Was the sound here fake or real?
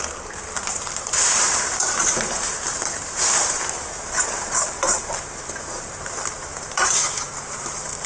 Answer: fake